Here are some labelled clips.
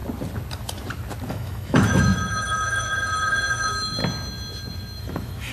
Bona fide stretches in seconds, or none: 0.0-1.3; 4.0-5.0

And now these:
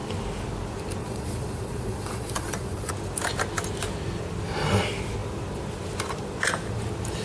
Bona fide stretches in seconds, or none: 0.0-1.0; 2.9-7.2

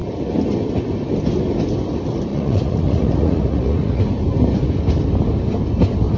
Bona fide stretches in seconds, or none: 0.0-2.3; 4.0-6.2